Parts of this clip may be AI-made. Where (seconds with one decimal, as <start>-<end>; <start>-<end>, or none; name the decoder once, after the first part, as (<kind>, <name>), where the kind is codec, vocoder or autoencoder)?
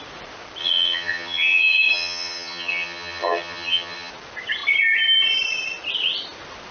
0.6-4.1 (vocoder, HiFi-GAN)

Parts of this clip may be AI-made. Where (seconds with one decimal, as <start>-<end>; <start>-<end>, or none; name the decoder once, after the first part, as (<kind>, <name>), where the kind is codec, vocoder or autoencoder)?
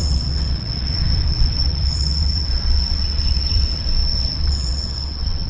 0.0-5.5 (vocoder, WaveNeXt)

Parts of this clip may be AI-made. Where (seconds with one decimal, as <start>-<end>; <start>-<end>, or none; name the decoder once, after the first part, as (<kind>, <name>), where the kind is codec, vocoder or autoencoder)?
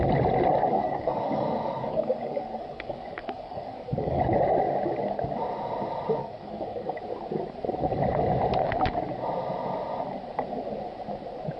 0.7-4.2 (codec, DAC); 6.2-7.0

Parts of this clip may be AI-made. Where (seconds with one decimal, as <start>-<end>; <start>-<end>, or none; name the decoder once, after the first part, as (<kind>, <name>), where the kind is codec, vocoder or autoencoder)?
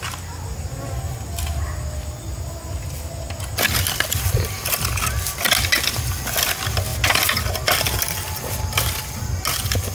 none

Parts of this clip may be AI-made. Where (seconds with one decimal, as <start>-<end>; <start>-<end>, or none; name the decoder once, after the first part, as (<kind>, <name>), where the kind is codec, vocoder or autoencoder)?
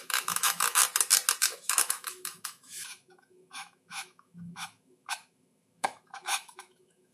0.0-0.8 (autoencoder, DAC-VAE); 1.4-7.1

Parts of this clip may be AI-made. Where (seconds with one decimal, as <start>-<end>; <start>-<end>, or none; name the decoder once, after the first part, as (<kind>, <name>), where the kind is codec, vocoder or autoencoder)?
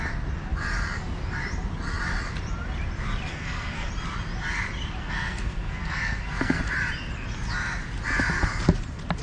3.3-3.9 (codec, SNAC); 5.0-6.6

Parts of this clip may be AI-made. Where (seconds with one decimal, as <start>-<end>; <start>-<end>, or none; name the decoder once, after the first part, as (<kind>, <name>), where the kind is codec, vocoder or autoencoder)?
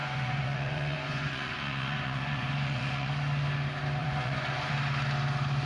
0.0-3.1 (vocoder, Vocos); 4.0-4.7